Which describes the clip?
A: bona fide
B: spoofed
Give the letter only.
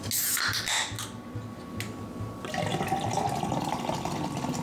A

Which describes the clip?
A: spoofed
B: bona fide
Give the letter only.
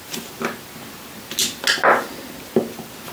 B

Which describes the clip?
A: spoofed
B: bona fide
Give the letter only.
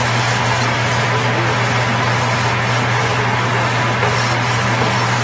B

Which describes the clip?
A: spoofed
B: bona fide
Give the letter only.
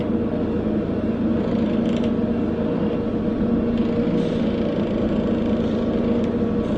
B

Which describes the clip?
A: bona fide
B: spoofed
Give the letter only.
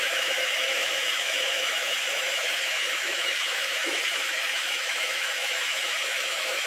B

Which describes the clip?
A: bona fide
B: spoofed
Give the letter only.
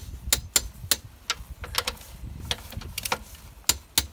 A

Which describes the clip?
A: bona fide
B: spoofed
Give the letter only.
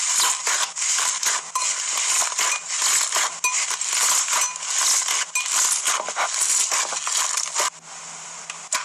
A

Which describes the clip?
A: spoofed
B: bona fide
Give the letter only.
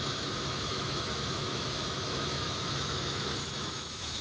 A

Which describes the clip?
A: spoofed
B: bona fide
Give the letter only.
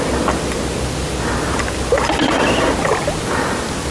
B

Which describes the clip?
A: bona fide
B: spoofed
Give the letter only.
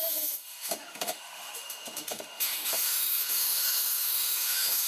B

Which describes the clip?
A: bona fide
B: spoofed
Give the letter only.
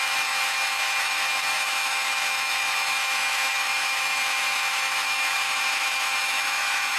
B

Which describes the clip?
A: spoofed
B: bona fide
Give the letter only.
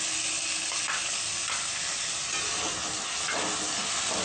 B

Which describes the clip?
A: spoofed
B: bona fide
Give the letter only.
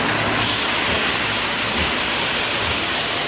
B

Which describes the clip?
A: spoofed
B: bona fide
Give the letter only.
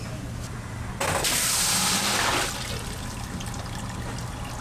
B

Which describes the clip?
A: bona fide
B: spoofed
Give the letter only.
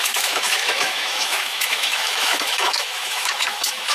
B